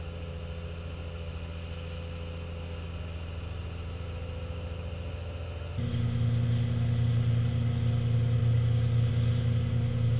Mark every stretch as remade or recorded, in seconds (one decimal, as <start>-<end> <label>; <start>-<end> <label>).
0.0-10.2 recorded